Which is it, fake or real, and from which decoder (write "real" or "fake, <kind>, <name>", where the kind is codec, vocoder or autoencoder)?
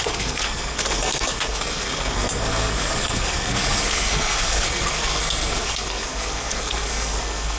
fake, codec, SNAC